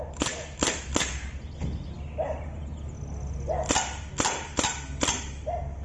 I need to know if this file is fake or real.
real